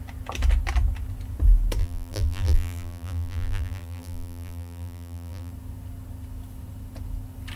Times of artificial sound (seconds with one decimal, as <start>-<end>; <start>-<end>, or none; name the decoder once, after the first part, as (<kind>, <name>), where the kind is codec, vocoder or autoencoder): 1.8-5.5 (vocoder, BigVGAN v2)